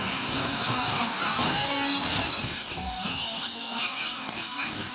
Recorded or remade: remade